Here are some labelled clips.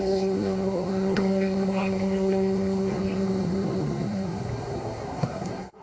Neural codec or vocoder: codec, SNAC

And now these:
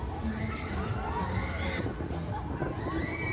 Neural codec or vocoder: none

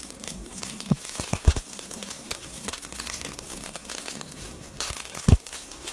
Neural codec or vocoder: codec, SNAC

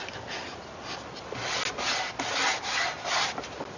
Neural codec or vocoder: none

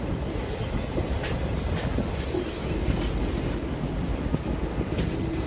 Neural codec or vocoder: none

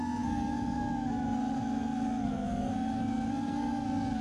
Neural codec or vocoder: codec, SNAC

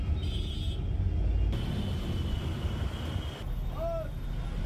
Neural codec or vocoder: none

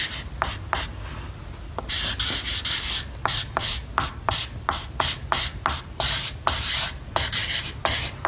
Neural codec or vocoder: none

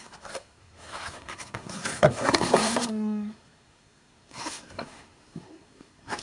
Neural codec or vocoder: codec, SNAC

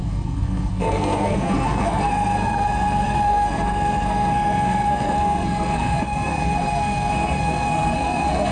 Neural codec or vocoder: codec, SNAC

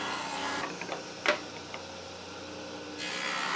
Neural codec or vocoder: none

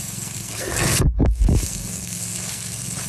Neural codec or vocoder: codec, SNAC